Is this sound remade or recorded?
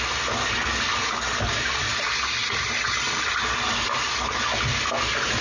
recorded